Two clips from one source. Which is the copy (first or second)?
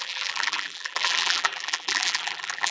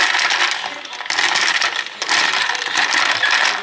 first